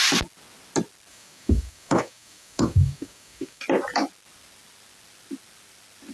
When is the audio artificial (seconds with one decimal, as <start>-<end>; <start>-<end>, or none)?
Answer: 1.1-3.6